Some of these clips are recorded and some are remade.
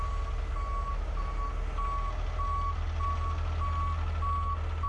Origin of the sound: recorded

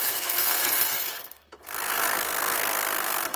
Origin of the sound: remade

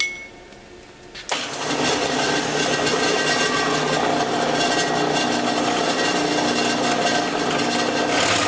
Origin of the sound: recorded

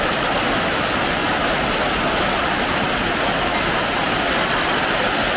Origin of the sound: recorded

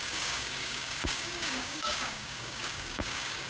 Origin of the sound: remade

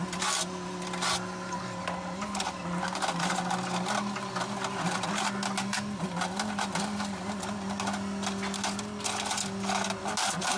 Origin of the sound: recorded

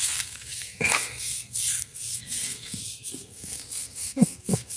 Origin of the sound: remade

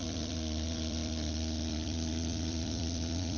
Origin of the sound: remade